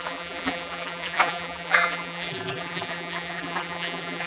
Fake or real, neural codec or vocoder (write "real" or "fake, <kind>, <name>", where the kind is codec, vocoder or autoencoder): fake, vocoder, BigVGAN v2